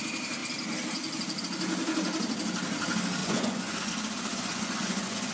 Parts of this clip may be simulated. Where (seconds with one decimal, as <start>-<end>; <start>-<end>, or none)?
3.2-3.9; 4.3-5.3